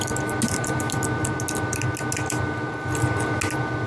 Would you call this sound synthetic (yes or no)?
no